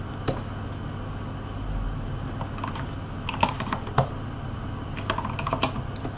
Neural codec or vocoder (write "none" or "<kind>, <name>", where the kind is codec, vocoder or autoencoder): none